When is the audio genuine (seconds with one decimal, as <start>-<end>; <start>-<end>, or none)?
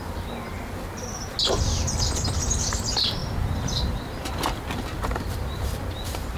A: 0.0-1.4; 2.3-3.2